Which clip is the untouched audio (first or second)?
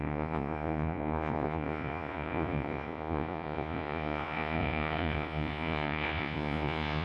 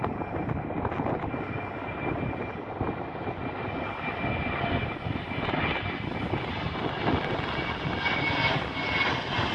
second